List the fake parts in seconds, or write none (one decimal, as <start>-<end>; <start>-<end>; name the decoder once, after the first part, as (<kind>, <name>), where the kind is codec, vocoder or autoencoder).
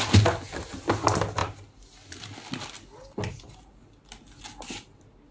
none